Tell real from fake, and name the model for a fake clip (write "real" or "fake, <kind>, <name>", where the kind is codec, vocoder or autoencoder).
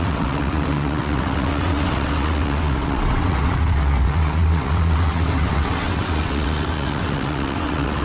fake, vocoder, WaveNeXt